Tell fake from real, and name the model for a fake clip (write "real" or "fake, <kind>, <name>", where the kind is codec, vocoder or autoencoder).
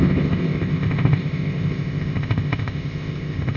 fake, codec, ZipCodec